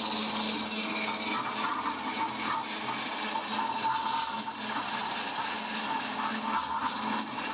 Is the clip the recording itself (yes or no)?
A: yes